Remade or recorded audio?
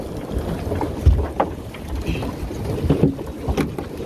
recorded